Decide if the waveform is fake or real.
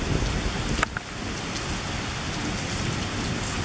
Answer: real